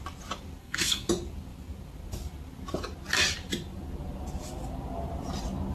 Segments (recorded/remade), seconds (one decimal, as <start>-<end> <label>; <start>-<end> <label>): 0.0-0.6 recorded; 0.6-1.1 remade; 1.1-5.7 recorded